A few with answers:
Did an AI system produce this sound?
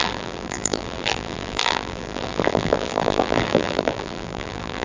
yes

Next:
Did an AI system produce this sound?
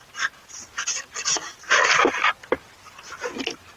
no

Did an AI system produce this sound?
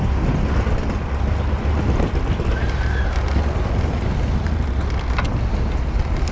no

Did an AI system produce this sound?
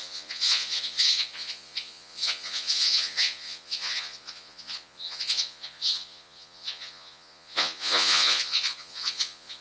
yes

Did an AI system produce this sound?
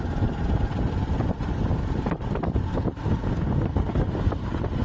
no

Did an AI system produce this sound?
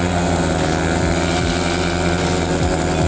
no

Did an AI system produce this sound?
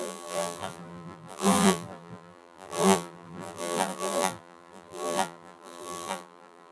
yes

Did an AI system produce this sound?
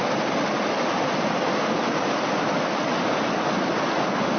no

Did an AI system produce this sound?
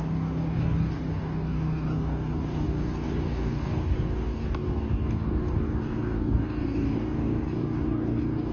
yes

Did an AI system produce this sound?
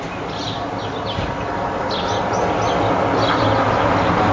no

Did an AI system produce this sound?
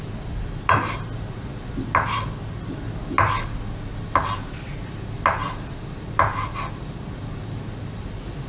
no